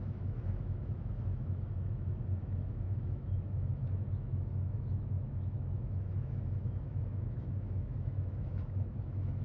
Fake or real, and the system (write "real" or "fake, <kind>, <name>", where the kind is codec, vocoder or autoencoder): fake, autoencoder, DAC-VAE